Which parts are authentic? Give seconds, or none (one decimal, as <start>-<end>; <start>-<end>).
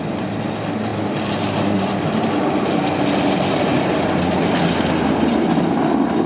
0.0-6.3